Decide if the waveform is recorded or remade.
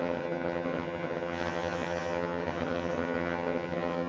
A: remade